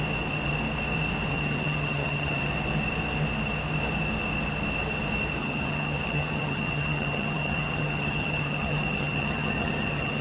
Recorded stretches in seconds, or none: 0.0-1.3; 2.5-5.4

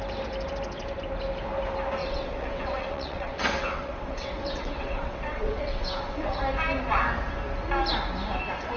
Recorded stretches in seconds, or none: 0.0-2.0; 6.4-8.8

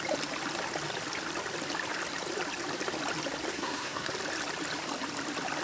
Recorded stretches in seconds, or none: 0.0-3.5; 4.1-5.6

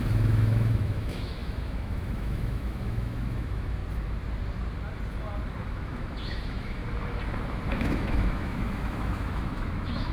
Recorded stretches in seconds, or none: 3.8-5.7; 6.8-7.7

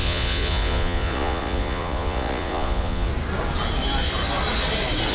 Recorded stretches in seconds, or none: 3.1-5.1

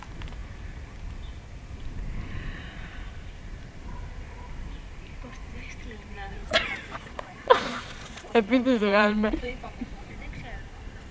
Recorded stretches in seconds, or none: 0.0-6.4; 10.3-11.1

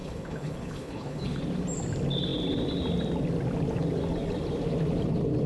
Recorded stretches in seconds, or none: 1.4-5.5